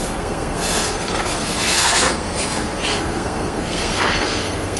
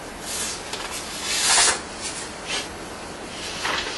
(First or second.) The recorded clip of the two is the second